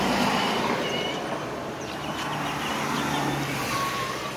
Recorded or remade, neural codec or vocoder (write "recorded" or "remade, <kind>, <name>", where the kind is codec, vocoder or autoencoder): remade, vocoder, BigVGAN v2